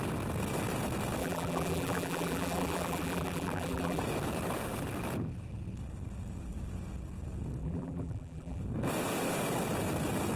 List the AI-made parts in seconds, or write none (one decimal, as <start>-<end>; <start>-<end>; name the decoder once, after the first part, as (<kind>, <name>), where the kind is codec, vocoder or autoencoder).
1.2-4.0 (vocoder, BigVGAN v2); 7.6-8.6